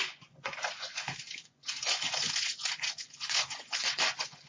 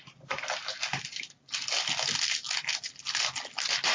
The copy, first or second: first